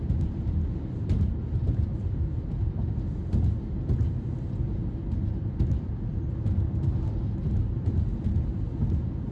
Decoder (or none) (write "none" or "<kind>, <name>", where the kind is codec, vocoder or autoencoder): none